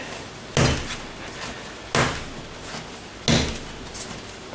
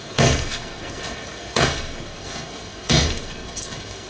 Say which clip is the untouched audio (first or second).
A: first